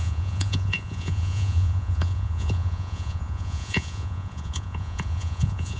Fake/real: fake